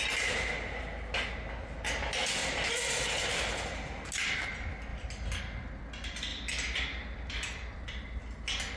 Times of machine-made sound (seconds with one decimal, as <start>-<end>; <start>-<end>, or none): 2.4-2.9